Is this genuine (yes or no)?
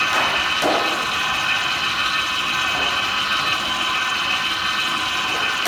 yes